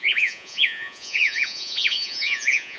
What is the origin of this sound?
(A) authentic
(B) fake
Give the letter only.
B